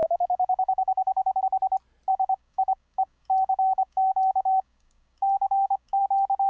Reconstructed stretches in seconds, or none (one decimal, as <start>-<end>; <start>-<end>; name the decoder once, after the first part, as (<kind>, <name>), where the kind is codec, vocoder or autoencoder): 0.0-1.4 (codec, DAC); 2.1-6.0